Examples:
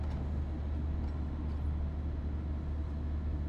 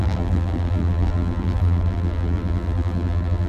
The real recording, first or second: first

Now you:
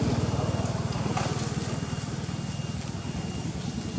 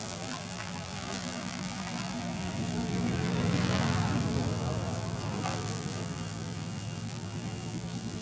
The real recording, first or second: first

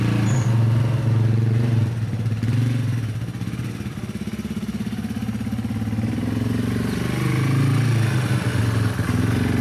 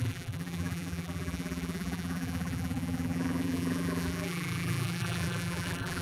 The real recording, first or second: first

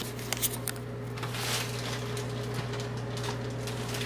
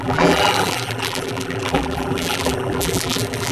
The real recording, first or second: first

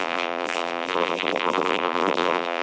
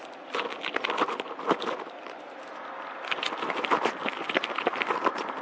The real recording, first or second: second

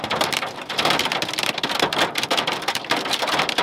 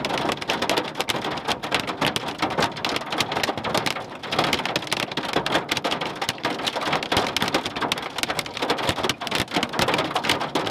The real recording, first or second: second